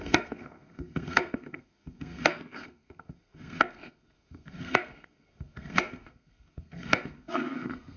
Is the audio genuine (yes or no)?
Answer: no